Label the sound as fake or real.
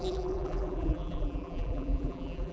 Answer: fake